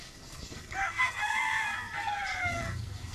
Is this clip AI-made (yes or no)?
yes